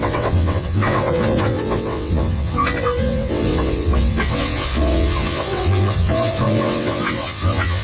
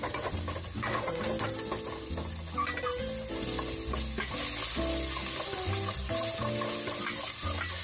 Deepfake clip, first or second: first